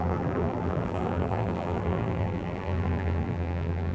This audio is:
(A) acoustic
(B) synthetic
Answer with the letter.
B